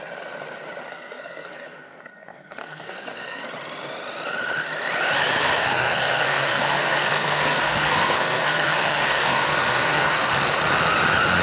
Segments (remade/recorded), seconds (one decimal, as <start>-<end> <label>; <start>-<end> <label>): 0.0-0.9 recorded; 0.9-3.4 remade; 3.4-5.6 recorded; 5.6-10.3 remade; 10.3-11.4 recorded